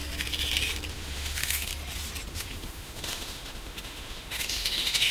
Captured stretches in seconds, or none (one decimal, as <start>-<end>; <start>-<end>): 0.0-0.9; 1.7-2.3